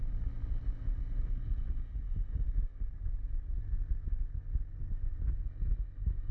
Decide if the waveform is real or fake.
real